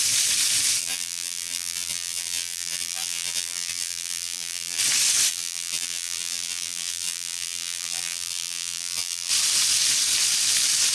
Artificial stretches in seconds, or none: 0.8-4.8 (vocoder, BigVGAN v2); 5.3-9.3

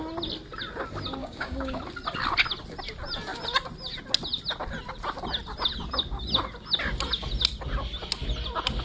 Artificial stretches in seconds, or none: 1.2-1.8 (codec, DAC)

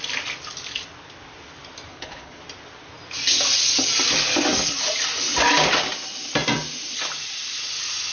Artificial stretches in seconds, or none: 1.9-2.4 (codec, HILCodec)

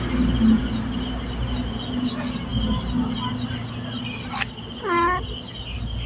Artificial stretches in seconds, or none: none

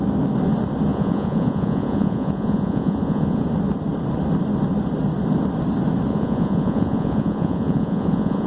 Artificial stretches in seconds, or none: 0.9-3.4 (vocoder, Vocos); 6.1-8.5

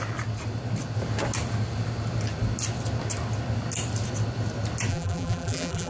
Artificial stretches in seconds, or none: 4.9-5.9 (vocoder, BigVGAN v2)